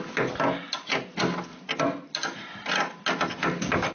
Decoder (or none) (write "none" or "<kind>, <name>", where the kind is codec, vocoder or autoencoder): none